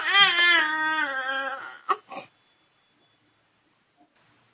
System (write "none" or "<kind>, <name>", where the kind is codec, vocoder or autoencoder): none